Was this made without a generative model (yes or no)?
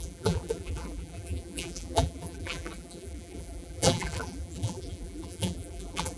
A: no